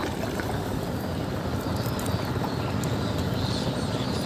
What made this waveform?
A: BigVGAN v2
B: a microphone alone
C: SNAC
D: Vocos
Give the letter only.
B